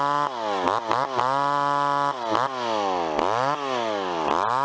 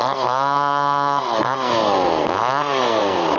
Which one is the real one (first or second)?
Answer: first